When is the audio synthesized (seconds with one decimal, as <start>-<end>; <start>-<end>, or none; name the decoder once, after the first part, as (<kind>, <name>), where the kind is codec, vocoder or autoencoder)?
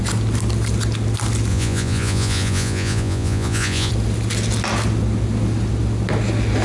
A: 1.5-3.9 (vocoder, Vocos)